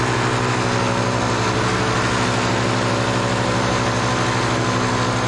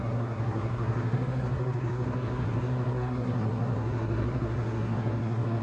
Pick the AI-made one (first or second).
second